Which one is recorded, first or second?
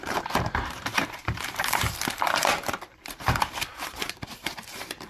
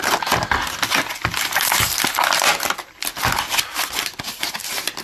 second